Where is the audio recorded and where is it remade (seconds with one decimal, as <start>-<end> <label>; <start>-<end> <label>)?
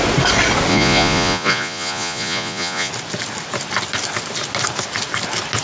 0.0-0.7 recorded; 0.7-2.9 remade; 2.9-5.6 recorded